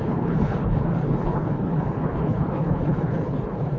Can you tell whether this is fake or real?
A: fake